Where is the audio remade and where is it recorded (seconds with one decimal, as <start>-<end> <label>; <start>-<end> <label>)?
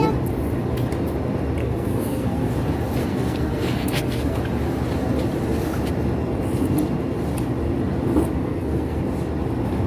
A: 0.0-1.6 recorded; 1.6-2.5 remade; 2.5-3.0 recorded; 3.0-4.4 remade; 4.4-8.4 recorded; 8.4-9.0 remade; 9.0-9.9 recorded